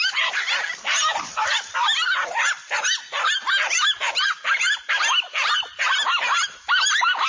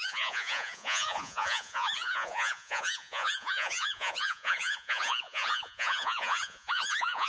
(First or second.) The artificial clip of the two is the second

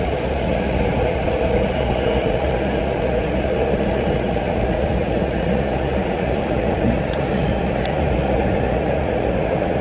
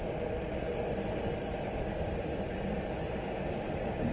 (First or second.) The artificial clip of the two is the first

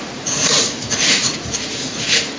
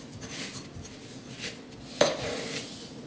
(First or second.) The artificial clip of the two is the first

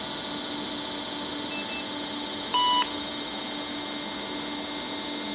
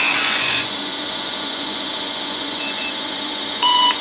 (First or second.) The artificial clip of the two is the second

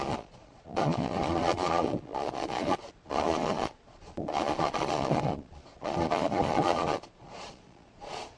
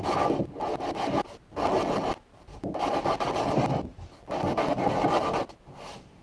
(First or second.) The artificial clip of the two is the first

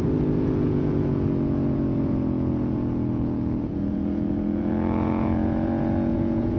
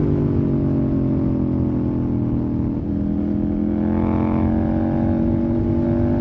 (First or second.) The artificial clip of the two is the first